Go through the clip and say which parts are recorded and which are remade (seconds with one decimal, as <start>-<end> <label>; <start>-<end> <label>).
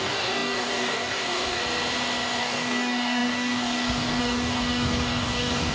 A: 0.0-1.6 remade; 1.6-2.4 recorded; 2.4-5.7 remade